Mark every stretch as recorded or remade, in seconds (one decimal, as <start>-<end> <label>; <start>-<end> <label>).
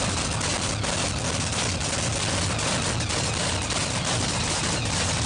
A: 0.0-3.8 recorded; 3.8-5.3 remade